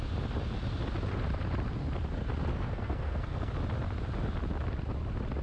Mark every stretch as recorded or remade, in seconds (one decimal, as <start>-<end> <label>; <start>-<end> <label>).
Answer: 0.0-2.5 recorded; 2.5-3.5 remade; 3.5-5.4 recorded